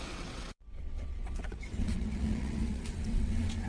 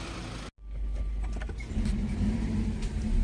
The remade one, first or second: first